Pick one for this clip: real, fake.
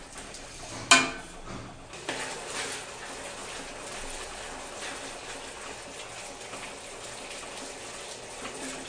real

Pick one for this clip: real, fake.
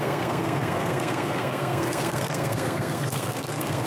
fake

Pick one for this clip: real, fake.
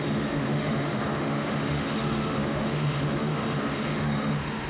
fake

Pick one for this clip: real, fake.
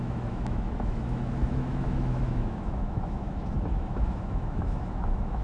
fake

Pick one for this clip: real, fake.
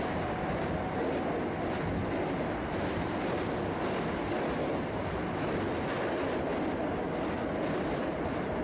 real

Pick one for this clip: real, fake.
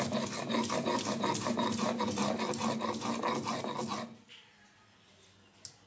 real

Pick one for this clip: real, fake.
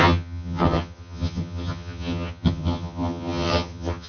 fake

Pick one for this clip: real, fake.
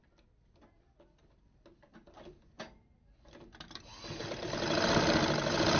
real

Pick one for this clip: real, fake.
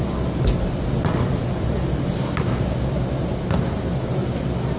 real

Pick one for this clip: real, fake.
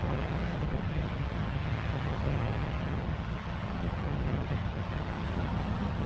fake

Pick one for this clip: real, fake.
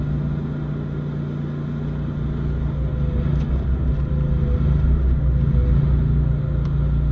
real